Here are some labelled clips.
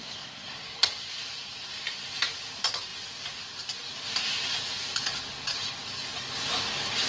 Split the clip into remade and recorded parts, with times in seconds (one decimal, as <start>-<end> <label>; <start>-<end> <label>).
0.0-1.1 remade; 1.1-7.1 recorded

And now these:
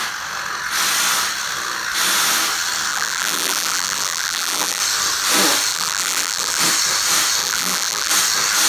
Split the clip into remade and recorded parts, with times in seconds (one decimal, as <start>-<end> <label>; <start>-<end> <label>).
0.0-2.9 recorded; 2.9-4.8 remade; 4.8-5.7 recorded; 5.7-6.6 remade; 6.6-7.4 recorded; 7.4-8.1 remade; 8.1-8.7 recorded

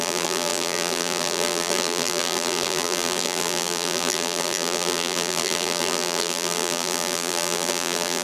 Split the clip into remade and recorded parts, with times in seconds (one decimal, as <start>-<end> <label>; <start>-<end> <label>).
0.0-8.2 remade

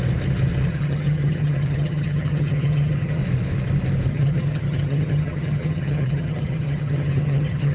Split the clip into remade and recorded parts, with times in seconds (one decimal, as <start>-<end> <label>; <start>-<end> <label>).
0.0-0.7 recorded; 0.7-3.2 remade; 3.2-4.1 recorded; 4.1-7.7 remade

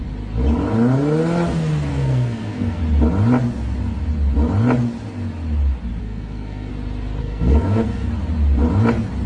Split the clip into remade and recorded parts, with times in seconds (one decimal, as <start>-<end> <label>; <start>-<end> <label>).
0.0-1.9 recorded; 1.9-2.8 remade; 2.8-6.0 recorded; 6.0-6.7 remade; 6.7-7.2 recorded; 7.2-8.1 remade; 8.1-9.3 recorded

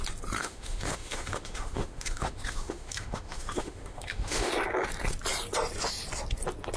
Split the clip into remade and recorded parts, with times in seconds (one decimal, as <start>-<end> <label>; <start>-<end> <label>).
0.0-0.4 recorded; 0.4-4.5 remade; 4.5-6.8 recorded

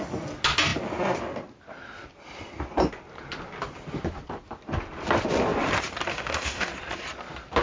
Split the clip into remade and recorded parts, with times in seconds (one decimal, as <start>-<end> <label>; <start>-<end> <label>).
0.0-6.1 recorded; 6.1-6.7 remade; 6.7-7.6 recorded